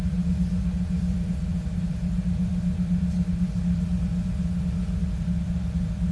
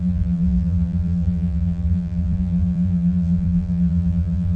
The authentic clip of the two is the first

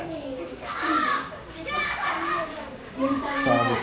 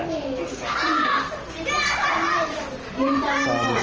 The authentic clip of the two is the second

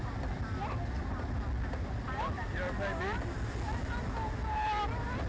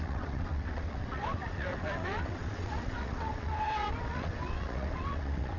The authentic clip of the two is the first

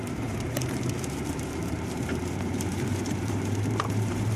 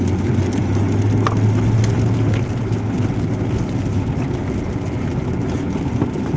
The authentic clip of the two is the second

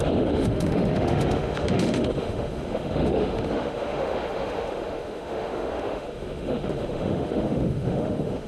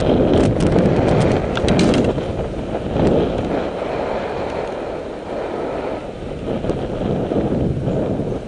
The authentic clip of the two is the second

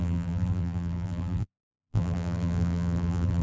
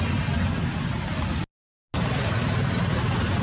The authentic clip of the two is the second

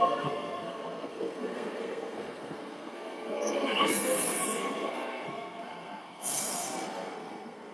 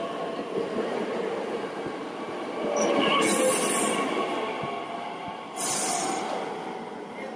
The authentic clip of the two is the second